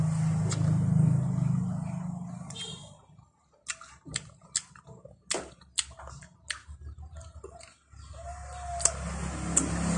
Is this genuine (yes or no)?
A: yes